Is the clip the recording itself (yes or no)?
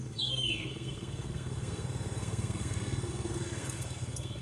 no